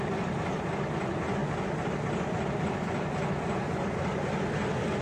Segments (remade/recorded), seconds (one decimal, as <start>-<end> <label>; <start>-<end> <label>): 0.0-1.4 remade; 1.4-2.5 recorded; 2.5-5.0 remade